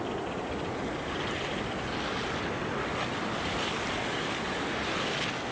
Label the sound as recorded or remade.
recorded